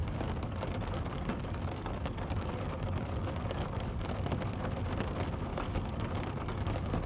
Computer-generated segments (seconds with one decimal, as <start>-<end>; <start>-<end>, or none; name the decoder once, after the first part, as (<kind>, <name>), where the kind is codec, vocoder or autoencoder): 0.0-4.3 (codec, DAC); 5.5-7.1